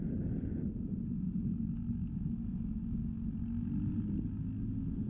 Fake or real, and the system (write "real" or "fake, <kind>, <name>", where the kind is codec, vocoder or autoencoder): real